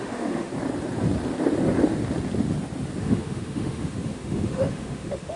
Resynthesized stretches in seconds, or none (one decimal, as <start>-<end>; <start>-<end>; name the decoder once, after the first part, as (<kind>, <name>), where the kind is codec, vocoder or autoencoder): 0.0-0.5 (autoencoder, DAC-VAE); 3.0-5.4